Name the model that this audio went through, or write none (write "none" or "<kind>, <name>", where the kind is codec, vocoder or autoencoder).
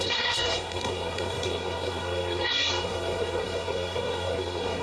codec, SNAC